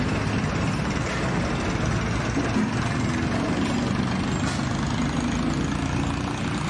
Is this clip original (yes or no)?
yes